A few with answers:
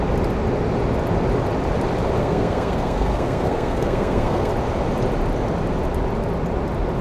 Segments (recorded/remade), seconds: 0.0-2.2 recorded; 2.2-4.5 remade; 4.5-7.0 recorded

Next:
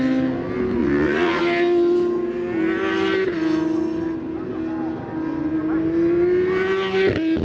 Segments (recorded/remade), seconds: 0.0-0.8 recorded; 0.8-1.4 remade; 1.4-7.4 recorded

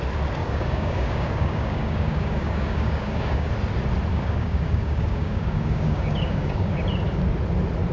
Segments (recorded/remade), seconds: 0.0-0.4 recorded; 0.4-3.5 remade; 3.5-4.1 recorded; 4.1-6.8 remade; 6.8-7.9 recorded

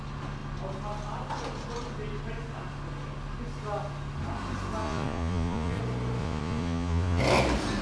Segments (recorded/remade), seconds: 0.0-4.8 recorded; 4.8-5.8 remade; 5.8-6.2 recorded; 6.2-7.2 remade; 7.2-7.8 recorded

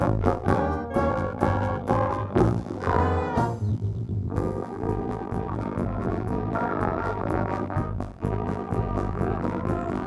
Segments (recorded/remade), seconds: 0.0-0.6 remade; 0.6-1.1 recorded; 1.1-3.0 remade; 3.0-3.7 recorded; 3.7-10.1 remade

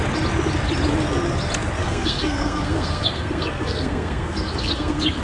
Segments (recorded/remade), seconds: 0.0-1.8 recorded; 1.8-5.2 remade